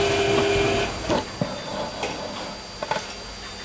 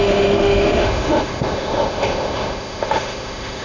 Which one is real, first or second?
first